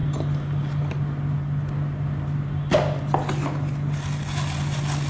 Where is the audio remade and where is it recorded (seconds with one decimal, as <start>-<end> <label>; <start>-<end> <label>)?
0.0-5.1 recorded